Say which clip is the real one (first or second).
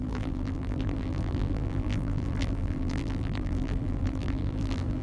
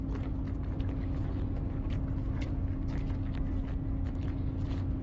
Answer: second